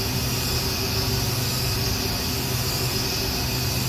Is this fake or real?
real